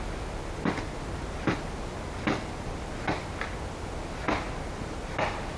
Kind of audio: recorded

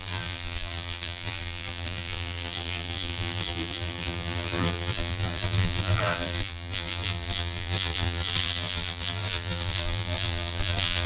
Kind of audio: remade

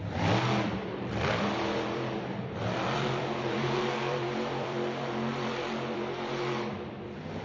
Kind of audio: remade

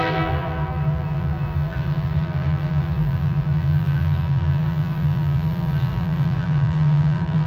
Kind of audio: remade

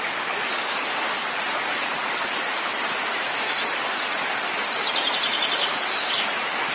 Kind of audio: recorded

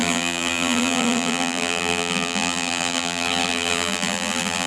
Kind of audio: remade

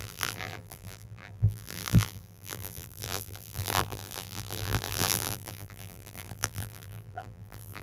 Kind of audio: remade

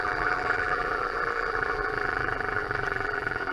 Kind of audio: remade